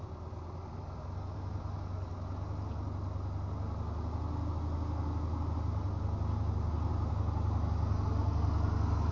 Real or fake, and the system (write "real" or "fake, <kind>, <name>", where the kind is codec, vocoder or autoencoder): real